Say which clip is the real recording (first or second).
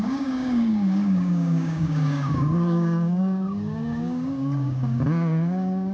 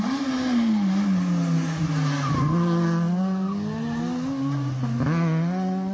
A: second